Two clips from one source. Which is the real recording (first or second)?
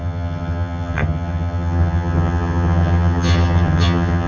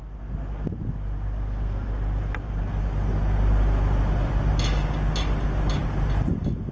second